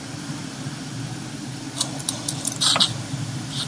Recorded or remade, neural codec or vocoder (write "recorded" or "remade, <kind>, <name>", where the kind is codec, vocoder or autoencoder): recorded